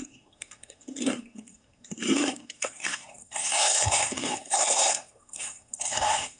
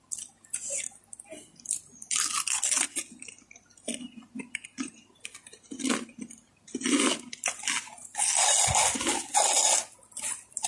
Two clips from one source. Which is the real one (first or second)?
second